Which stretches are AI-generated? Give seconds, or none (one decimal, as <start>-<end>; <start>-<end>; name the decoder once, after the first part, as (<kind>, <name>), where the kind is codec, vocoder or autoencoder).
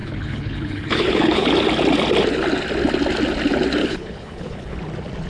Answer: 0.0-1.5 (codec, HILCodec); 3.8-4.8